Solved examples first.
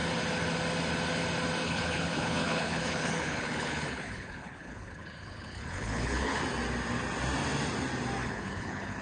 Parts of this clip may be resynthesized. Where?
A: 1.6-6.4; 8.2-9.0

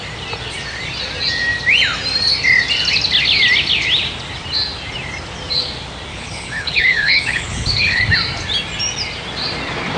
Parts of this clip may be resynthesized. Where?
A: 6.1-8.0

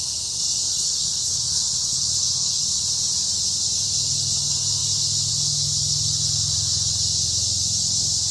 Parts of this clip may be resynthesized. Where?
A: 0.7-2.6

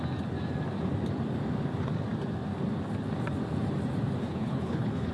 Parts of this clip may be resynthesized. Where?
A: 4.2-5.1

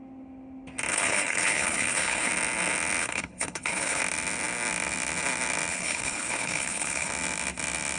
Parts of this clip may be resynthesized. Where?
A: 0.9-2.3; 3.0-4.0; 5.7-7.1

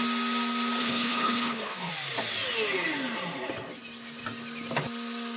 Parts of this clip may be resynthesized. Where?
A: 0.8-1.9

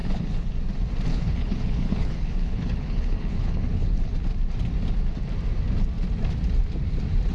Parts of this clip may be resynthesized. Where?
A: 0.0-0.5; 1.1-4.1